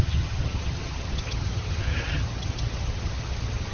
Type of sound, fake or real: fake